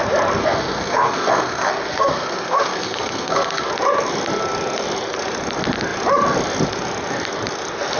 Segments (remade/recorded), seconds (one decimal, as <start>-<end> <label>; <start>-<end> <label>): 0.0-0.4 recorded; 0.4-3.7 remade; 3.7-8.0 recorded